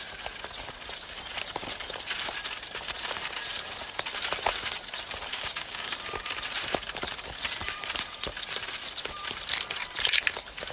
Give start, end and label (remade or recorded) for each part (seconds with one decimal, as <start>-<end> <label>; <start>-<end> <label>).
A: 0.0-5.3 recorded; 5.3-5.9 remade; 5.9-10.7 recorded